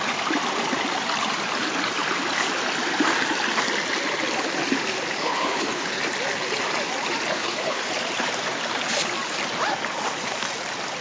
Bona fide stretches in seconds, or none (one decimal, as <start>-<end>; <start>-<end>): 0.0-5.2; 6.0-7.3; 7.9-11.0